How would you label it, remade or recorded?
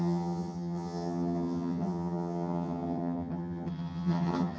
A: remade